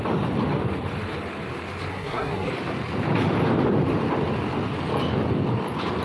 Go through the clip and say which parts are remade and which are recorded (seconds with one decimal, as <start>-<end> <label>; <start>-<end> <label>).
0.0-1.9 recorded; 1.9-2.5 remade; 2.5-6.0 recorded